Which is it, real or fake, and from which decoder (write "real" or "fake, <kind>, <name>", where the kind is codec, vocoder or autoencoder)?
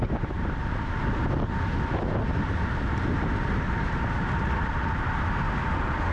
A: real